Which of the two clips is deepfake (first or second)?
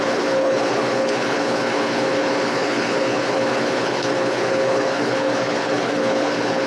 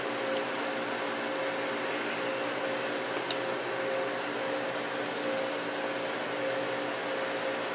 first